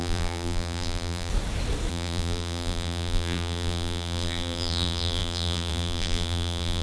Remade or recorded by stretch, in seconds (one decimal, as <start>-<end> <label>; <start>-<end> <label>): 0.0-1.3 remade; 1.3-1.9 recorded; 1.9-6.8 remade